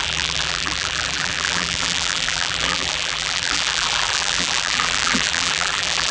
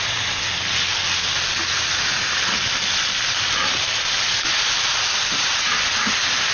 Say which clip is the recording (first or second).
second